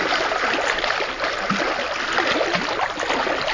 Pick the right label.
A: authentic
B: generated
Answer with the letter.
A